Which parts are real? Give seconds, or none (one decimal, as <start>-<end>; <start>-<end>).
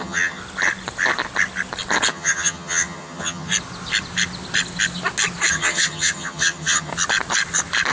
0.4-2.1; 3.5-5.5; 6.9-7.9